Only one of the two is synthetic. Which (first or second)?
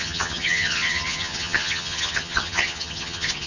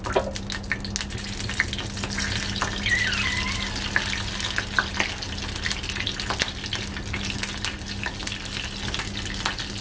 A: first